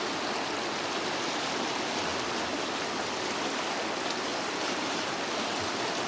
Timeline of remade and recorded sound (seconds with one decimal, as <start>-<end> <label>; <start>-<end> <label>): 0.0-4.3 recorded; 4.3-5.2 remade; 5.2-6.1 recorded

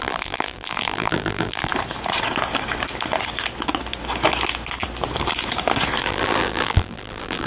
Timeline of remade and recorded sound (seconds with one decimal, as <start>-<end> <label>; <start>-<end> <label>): 0.0-1.7 remade; 1.7-6.0 recorded; 6.0-7.5 remade

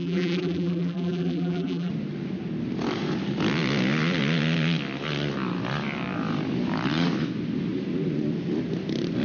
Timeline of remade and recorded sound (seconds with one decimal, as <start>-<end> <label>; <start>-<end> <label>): 0.0-1.9 remade; 1.9-9.2 recorded

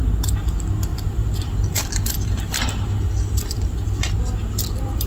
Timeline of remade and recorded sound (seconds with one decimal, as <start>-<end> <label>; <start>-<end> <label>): 0.0-0.9 recorded; 0.9-4.0 remade; 4.0-5.1 recorded

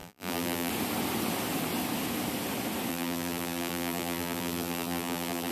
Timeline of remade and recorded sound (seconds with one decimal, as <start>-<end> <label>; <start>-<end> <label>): 0.0-0.7 remade; 0.7-2.9 recorded; 2.9-5.5 remade

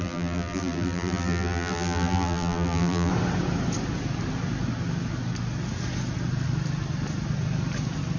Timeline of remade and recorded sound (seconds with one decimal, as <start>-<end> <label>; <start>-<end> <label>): 0.0-3.1 remade; 3.1-8.2 recorded

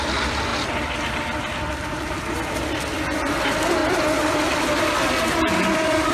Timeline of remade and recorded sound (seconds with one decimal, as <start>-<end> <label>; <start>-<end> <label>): 0.0-6.1 recorded

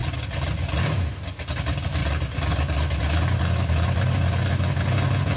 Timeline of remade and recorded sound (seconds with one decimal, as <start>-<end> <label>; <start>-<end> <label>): 0.0-5.4 recorded